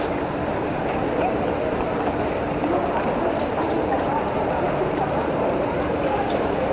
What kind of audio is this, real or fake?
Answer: fake